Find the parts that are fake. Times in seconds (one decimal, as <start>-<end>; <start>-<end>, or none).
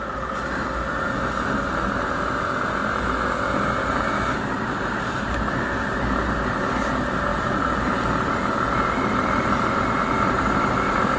2.8-6.0